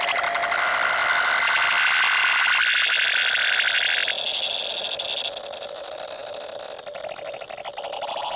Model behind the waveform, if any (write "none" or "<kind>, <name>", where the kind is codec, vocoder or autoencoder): none